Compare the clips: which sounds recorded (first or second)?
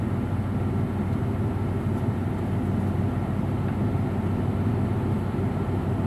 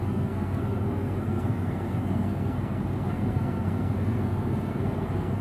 first